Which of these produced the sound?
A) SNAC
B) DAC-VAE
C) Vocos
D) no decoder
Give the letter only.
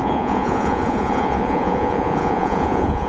C